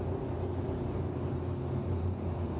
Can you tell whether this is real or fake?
real